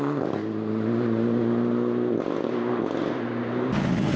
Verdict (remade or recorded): recorded